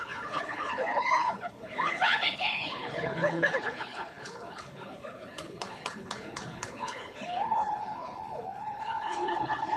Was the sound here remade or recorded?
remade